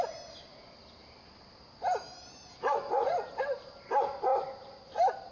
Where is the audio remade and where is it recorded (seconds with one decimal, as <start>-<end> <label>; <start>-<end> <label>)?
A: 0.0-5.3 recorded